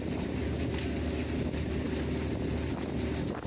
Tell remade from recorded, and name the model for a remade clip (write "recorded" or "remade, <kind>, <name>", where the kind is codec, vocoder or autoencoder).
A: recorded